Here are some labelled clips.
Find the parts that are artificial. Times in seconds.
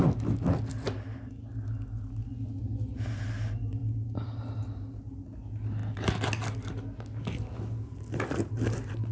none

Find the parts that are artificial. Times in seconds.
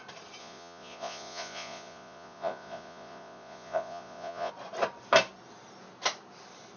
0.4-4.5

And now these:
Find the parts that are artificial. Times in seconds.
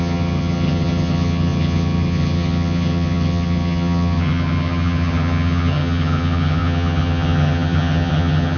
0.0-8.6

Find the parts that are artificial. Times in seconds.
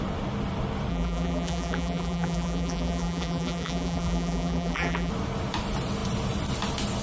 0.9-5.1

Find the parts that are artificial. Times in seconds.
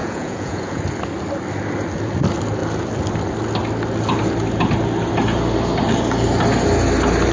0.0-0.8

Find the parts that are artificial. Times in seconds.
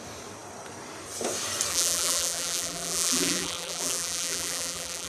1.7-5.1